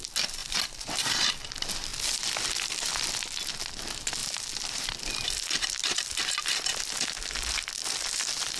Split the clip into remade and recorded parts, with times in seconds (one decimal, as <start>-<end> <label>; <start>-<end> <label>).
0.0-0.4 recorded; 0.4-1.1 remade; 1.1-1.9 recorded; 1.9-3.0 remade; 3.0-4.2 recorded; 4.2-6.2 remade; 6.2-8.6 recorded